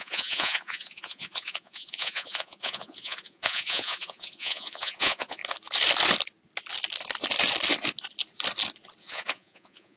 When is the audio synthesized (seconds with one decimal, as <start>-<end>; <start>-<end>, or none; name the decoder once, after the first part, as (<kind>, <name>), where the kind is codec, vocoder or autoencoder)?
0.0-5.4 (vocoder, Vocos); 9.0-10.0